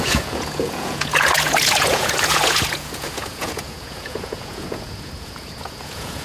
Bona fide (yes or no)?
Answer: no